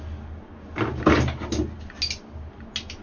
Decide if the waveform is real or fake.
real